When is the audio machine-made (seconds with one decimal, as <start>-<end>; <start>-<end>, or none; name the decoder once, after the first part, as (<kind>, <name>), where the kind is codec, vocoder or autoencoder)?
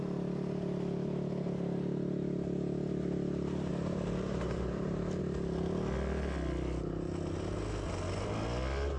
3.7-5.2 (vocoder, BigVGAN v2)